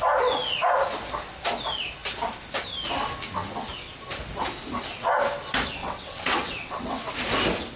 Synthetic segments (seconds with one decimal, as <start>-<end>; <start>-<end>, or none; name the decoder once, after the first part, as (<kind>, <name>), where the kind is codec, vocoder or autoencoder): 5.8-7.1 (vocoder, WaveNeXt)